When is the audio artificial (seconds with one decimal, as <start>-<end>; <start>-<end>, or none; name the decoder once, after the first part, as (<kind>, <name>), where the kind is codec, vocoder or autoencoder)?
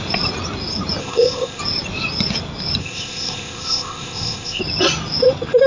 1.0-1.6 (codec, ZipCodec); 2.8-4.6